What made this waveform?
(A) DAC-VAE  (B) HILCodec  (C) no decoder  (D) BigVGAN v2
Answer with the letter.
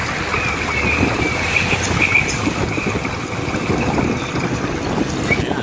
C